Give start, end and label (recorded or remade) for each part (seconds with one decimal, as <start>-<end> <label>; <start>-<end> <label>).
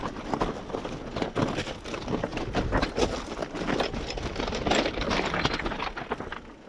0.0-6.7 recorded